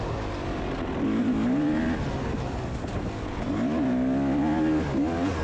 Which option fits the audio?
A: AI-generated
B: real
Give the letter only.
B